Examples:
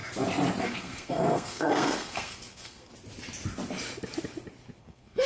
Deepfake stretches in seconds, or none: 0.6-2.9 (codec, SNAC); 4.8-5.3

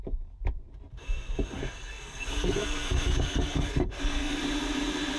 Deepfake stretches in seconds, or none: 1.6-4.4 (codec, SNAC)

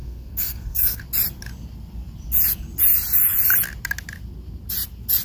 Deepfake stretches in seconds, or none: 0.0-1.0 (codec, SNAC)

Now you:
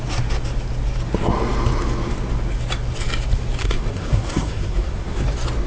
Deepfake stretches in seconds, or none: 3.6-5.2 (codec, SNAC)

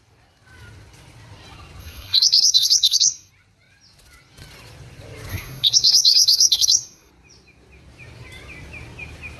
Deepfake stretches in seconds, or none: 1.8-3.3 (codec, SNAC); 5.3-7.1

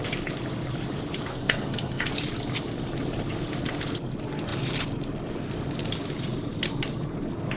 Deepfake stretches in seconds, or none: 1.3-2.1 (codec, SNAC)

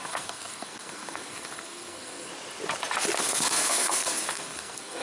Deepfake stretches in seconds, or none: 0.0-2.3 (codec, SNAC); 3.2-5.0